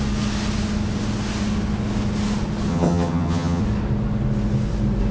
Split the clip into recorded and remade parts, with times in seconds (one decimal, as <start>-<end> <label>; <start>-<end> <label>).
0.0-2.7 recorded; 2.7-3.6 remade; 3.6-5.1 recorded